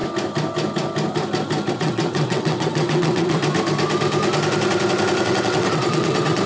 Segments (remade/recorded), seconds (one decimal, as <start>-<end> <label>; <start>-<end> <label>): 0.0-1.7 recorded; 1.7-3.4 remade; 3.4-5.2 recorded; 5.2-6.5 remade